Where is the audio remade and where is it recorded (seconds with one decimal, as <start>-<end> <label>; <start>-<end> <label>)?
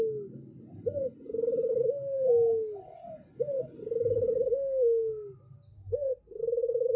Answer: 0.0-7.0 recorded